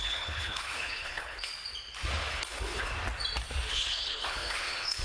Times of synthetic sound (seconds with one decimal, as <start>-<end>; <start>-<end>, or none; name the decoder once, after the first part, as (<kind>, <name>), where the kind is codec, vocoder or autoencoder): 0.0-1.5 (codec, HILCodec); 2.3-2.9; 3.7-5.0